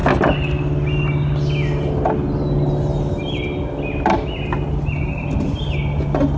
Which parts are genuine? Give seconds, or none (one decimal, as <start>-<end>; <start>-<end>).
0.0-6.4